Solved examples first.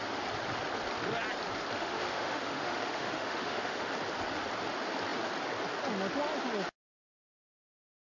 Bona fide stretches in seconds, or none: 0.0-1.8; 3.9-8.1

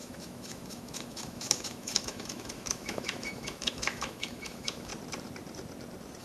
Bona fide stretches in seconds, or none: 4.9-6.2

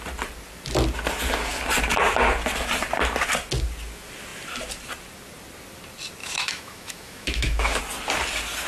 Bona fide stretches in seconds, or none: 0.0-6.2; 7.8-8.7

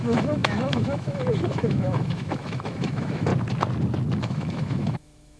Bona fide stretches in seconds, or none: 3.3-4.2

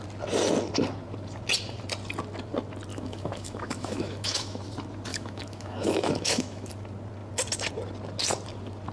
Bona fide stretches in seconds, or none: 0.0-2.9; 4.6-5.1; 6.7-8.9